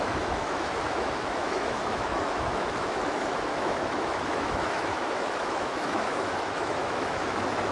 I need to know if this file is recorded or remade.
remade